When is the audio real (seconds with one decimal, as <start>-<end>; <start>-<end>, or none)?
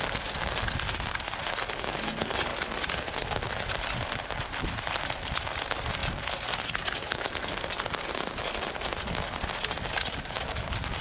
0.0-2.5; 4.6-11.0